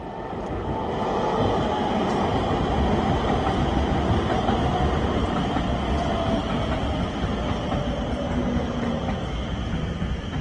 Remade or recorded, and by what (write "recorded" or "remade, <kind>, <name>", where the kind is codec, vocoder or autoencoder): recorded